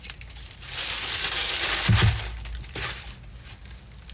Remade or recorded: recorded